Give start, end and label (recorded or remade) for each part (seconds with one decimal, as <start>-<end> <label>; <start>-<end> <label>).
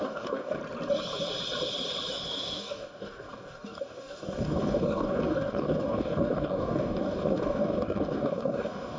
0.0-0.6 remade; 0.6-2.1 recorded; 2.1-9.0 remade